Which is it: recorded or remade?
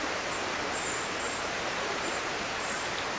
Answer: remade